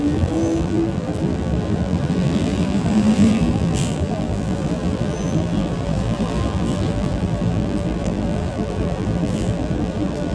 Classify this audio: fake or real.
fake